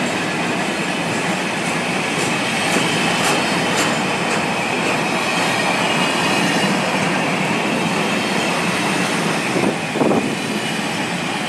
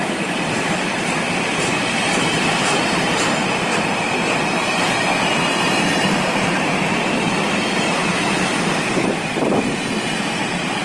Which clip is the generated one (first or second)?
second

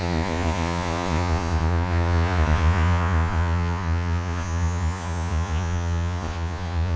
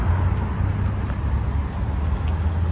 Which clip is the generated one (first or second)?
first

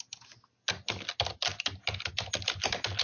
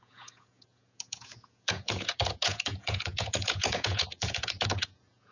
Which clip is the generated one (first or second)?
second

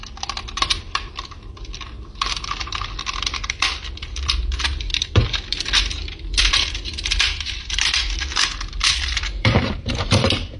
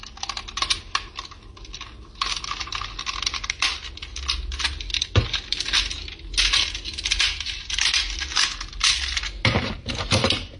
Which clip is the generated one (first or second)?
first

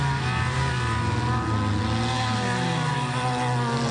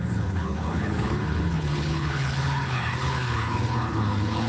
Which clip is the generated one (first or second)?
second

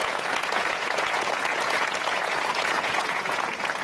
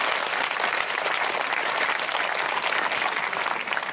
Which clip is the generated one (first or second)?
first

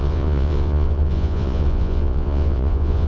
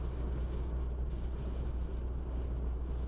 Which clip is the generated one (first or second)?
first